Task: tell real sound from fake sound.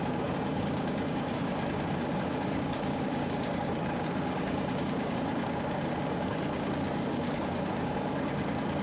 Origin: fake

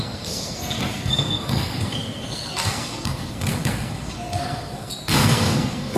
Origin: fake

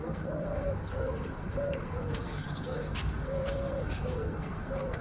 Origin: fake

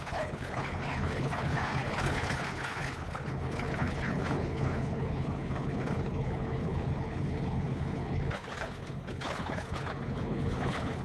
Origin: fake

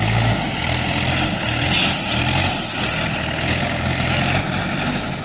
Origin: real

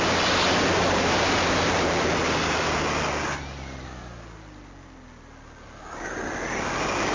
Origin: real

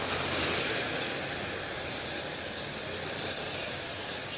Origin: real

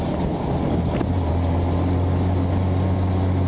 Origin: real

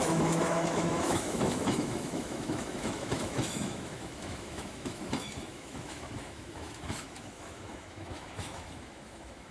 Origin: fake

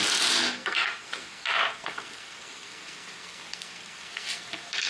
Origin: fake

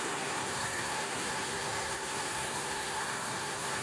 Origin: fake